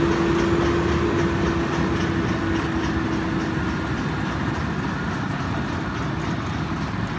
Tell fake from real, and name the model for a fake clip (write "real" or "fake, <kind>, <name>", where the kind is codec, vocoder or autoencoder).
real